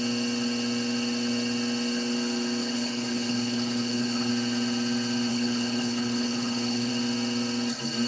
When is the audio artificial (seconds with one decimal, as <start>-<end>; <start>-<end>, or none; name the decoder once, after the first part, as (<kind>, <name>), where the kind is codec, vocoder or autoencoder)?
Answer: 2.6-4.3 (codec, HILCodec); 5.3-6.9